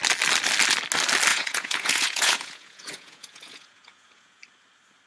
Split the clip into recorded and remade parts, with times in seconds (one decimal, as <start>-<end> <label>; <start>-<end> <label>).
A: 0.0-1.3 recorded; 1.3-4.4 remade; 4.4-5.1 recorded